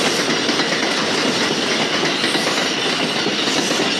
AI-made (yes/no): no